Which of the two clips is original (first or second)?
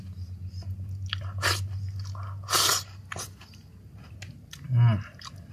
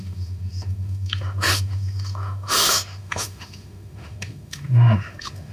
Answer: first